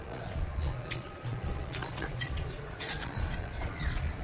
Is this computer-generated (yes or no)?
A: yes